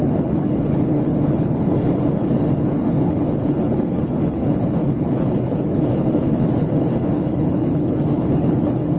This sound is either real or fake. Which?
fake